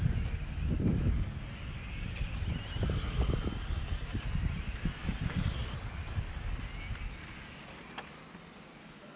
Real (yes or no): yes